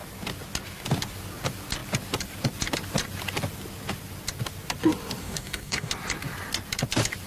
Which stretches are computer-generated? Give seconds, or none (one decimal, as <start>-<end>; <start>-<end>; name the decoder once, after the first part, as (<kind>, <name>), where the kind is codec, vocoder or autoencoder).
5.2-5.9 (codec, DAC)

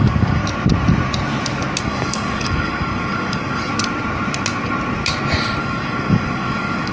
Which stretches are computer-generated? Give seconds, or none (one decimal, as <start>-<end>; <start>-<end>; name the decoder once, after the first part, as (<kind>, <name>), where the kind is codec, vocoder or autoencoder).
0.0-0.4 (codec, DAC); 1.8-3.7; 5.6-6.9